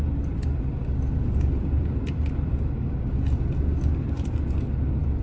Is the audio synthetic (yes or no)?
no